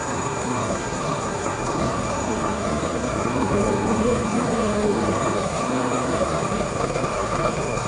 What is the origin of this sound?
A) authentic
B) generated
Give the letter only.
B